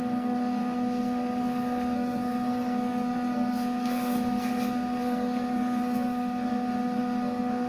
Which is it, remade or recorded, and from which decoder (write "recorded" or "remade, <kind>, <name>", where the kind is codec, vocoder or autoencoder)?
remade, codec, SNAC